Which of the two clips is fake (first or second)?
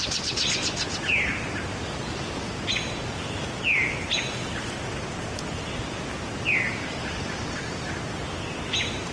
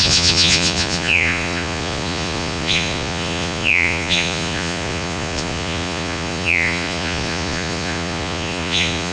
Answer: second